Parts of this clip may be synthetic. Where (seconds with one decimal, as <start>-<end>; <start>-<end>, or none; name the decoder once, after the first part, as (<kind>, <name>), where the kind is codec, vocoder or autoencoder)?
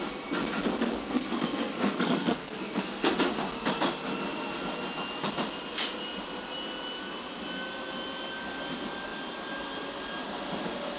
0.9-3.1 (codec, SNAC)